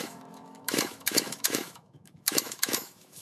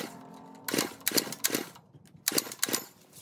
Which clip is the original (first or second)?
second